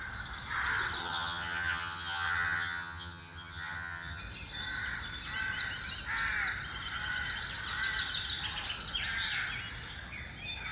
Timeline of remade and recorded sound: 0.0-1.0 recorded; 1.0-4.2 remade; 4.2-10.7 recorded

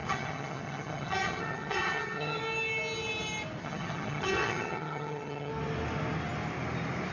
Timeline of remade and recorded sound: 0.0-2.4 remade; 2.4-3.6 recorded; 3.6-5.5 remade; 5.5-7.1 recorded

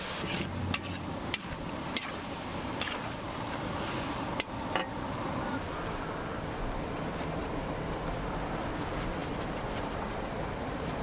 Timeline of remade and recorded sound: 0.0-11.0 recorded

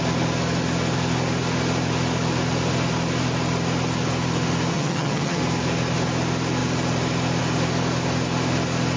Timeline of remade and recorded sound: 0.0-4.7 recorded; 4.7-5.4 remade; 5.4-9.0 recorded